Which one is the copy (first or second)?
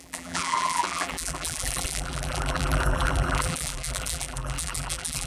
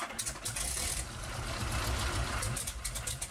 first